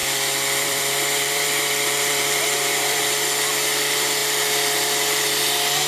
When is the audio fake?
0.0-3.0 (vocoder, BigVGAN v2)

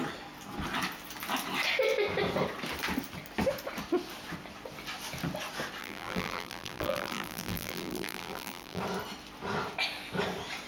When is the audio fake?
5.8-8.8 (vocoder, BigVGAN v2)

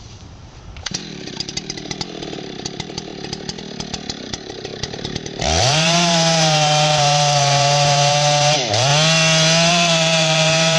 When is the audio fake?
0.0-3.1 (vocoder, BigVGAN v2); 4.2-8.9; 9.7-10.8

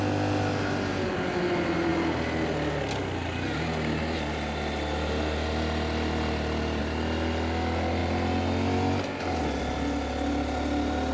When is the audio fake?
none

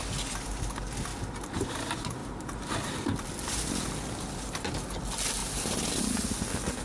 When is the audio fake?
1.1-1.7 (vocoder, BigVGAN v2); 2.2-3.7

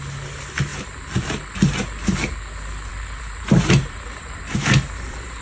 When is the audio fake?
2.9-5.4 (vocoder, BigVGAN v2)

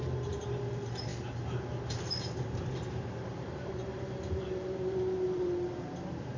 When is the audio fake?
0.0-1.1 (vocoder, BigVGAN v2); 2.9-6.4

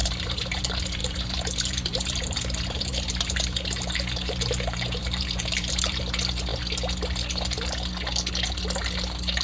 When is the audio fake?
0.0-0.6 (vocoder, BigVGAN v2); 1.0-6.0